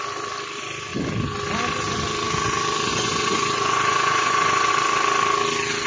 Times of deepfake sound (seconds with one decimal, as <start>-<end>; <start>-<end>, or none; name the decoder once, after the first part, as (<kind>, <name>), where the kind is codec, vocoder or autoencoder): 2.9-4.7 (vocoder, Vocos)

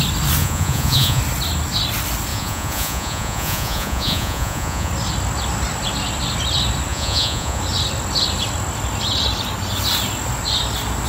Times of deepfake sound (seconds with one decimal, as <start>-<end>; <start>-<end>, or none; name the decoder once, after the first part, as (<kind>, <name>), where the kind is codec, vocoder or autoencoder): 0.4-1.2 (vocoder, Vocos); 2.3-4.9; 6.9-7.6

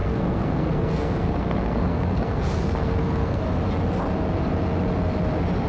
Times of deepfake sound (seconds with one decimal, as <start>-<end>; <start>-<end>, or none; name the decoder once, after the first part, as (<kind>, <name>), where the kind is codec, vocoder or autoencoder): 0.0-3.4 (codec, SNAC)

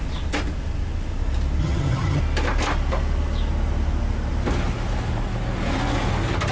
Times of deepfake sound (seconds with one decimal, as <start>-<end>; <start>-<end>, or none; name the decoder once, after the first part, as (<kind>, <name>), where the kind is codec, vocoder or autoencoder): 1.6-2.2 (vocoder, HiFi-GAN)

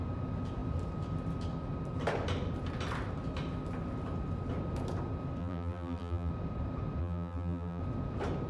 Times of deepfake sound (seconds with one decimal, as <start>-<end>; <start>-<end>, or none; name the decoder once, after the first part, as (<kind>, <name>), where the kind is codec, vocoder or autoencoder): 5.4-6.3 (vocoder, BigVGAN v2); 7.0-7.8

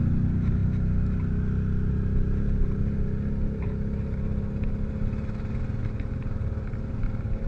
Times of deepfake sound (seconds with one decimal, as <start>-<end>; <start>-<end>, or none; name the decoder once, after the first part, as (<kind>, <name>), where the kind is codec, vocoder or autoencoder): none